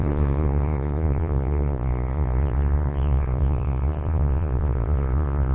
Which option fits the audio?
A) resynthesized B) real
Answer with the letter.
A